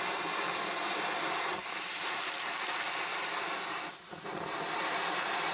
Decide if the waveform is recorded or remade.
recorded